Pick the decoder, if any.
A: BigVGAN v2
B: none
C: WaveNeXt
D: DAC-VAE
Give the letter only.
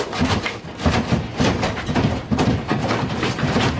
B